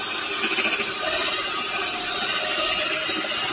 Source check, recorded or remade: recorded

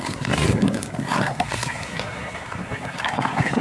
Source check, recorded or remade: remade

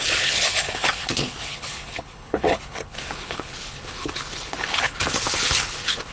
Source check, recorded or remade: remade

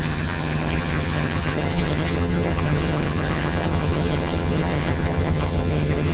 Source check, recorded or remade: remade